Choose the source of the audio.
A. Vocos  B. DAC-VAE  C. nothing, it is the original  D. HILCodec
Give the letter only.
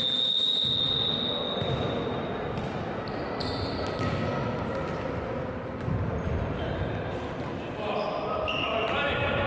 C